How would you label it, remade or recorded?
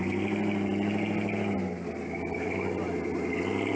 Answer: recorded